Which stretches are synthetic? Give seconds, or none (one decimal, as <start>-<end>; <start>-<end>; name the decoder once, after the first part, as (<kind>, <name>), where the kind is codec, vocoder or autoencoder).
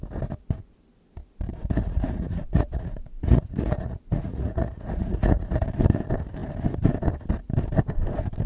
1.5-5.6 (vocoder, Vocos)